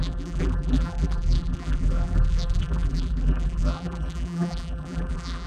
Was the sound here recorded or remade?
remade